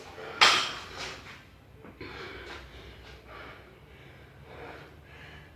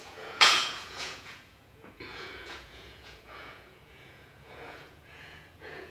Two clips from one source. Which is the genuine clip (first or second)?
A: first